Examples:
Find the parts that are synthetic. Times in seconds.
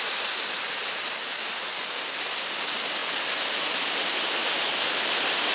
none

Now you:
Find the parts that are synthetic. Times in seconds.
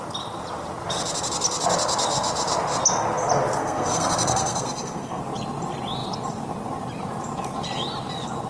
3.6-5.2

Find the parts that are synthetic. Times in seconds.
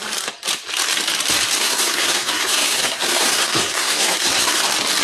1.6-4.6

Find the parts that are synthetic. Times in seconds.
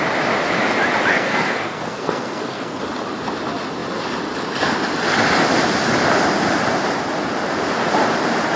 1.1-2.8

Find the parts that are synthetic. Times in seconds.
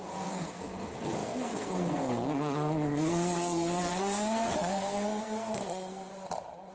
0.0-6.1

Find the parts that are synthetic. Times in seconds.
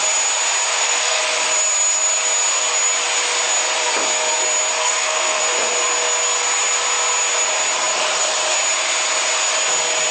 0.7-1.2; 4.8-5.4